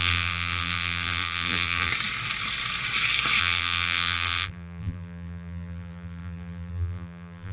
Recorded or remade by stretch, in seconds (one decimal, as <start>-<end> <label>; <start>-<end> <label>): 0.0-1.9 remade; 1.9-3.4 recorded; 3.4-7.5 remade